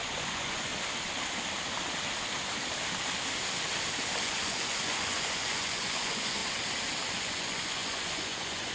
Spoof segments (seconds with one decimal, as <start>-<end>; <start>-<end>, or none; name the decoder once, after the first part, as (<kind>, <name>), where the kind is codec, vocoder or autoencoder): 0.0-0.7 (vocoder, Vocos); 4.2-6.4; 7.1-8.7

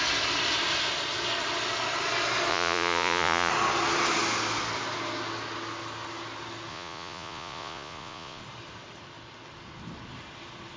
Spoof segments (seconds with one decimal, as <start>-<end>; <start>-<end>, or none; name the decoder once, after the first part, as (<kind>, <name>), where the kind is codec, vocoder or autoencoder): 2.5-3.5 (vocoder, Vocos); 6.7-8.4

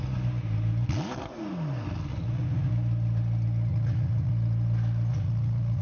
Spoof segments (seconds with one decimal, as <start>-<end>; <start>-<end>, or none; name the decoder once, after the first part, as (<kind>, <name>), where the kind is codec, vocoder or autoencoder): 2.1-2.7 (vocoder, Vocos); 3.7-4.3; 5.1-5.8

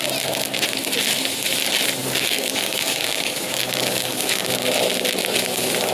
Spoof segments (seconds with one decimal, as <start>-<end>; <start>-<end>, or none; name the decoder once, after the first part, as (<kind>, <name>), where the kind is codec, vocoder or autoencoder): 2.0-4.5 (codec, DAC)

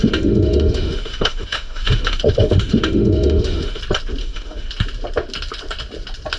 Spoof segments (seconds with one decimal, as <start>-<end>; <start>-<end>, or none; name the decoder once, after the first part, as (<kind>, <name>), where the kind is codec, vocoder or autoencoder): 0.0-3.8 (autoencoder, DAC-VAE); 4.2-4.7

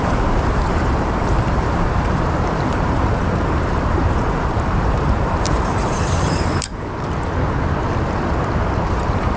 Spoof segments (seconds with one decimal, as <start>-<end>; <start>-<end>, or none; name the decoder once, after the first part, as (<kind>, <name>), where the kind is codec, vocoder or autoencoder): 0.0-6.7 (vocoder, BigVGAN v2); 9.0-9.4